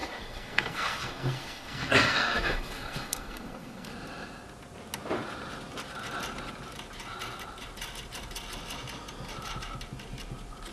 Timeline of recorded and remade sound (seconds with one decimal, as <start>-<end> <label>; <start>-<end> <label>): 0.0-3.9 remade; 3.9-10.7 recorded